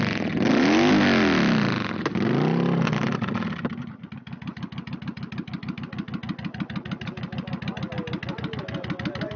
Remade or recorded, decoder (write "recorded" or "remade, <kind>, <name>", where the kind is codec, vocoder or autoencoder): recorded